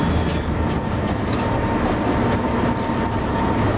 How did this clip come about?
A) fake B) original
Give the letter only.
B